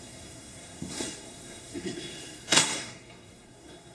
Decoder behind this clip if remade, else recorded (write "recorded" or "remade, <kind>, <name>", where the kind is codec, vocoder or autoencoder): remade, codec, SNAC